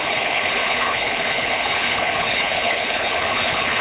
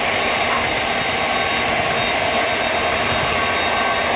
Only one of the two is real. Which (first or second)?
second